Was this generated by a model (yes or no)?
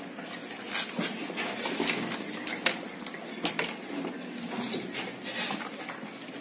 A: no